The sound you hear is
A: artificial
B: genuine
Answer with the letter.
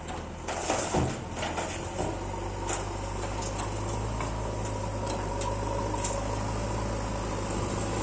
B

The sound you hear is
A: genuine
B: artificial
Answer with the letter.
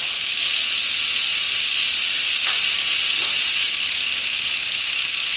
A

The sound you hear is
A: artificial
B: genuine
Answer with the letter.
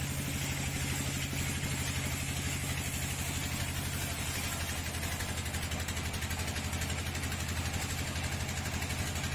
B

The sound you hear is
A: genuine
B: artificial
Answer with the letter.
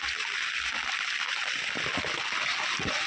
A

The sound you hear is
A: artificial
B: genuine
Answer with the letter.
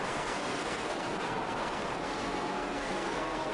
A